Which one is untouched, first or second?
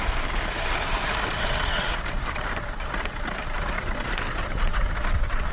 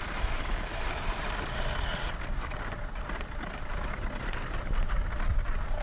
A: second